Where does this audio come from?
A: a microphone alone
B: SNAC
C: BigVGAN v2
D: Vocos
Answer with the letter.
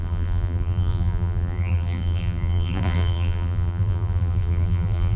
C